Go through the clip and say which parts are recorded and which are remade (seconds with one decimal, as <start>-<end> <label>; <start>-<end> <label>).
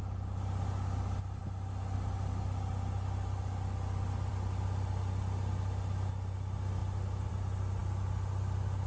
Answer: 0.0-8.9 recorded